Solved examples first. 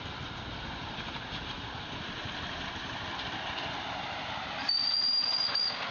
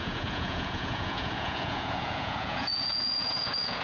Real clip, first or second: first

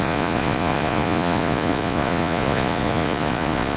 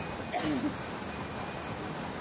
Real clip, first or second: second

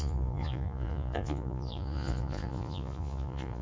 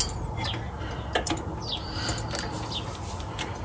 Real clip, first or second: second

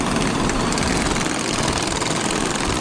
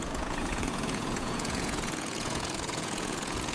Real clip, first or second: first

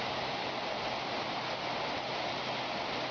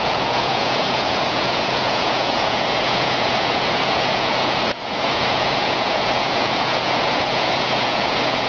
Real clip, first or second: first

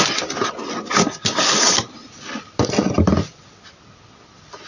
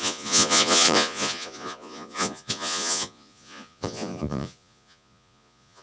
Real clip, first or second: first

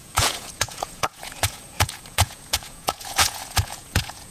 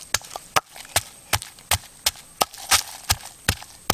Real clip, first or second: second